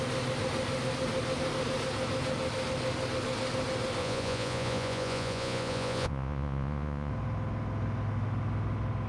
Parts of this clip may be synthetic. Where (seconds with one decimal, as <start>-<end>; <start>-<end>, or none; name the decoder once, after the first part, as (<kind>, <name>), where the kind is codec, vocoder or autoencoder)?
4.0-7.1 (vocoder, Vocos)

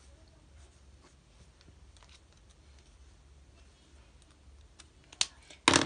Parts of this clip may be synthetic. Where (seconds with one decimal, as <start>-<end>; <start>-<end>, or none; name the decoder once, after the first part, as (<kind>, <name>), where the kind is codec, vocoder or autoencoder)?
0.0-3.7 (vocoder, BigVGAN v2)

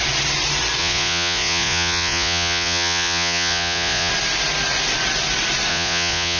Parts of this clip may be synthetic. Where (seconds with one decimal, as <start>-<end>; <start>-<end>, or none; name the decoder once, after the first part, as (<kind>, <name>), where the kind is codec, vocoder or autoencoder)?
0.8-4.1 (vocoder, Vocos); 5.7-6.4

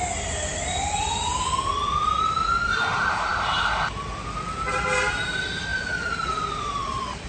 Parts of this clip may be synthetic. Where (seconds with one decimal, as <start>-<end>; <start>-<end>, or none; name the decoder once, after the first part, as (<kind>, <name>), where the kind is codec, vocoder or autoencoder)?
none